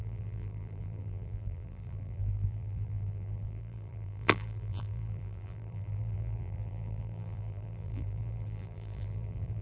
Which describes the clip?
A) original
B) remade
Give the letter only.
B